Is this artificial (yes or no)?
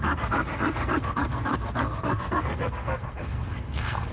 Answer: yes